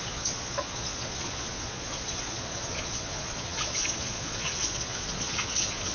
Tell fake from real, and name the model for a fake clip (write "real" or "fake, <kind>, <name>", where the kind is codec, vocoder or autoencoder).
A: fake, vocoder, Vocos